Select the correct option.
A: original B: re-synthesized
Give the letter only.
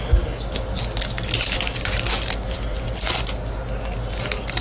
A